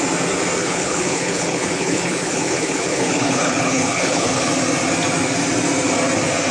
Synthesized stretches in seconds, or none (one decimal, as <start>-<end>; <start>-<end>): 0.6-4.5

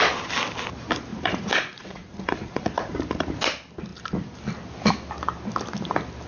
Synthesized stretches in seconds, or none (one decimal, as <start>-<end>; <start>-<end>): 1.1-2.9

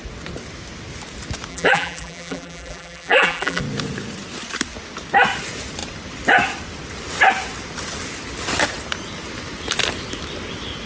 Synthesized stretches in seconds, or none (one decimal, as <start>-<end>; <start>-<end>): 1.5-3.6

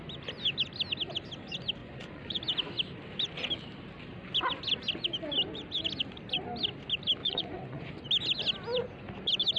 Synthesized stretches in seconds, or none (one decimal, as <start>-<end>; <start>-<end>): 1.8-2.4; 7.2-7.9

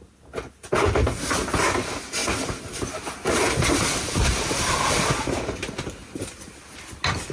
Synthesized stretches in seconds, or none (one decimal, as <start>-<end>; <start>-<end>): none

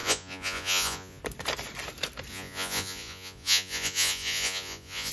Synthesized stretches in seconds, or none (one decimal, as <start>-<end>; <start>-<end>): 0.0-1.2; 2.3-5.1